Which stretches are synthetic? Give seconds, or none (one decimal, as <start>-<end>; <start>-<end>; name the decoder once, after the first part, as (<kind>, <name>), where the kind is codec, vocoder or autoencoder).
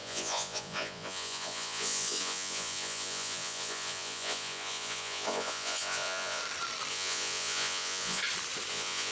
0.0-6.4 (vocoder, Vocos); 6.9-8.2; 8.7-9.1